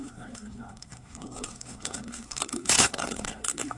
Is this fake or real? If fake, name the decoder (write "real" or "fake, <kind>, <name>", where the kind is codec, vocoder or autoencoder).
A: fake, codec, SNAC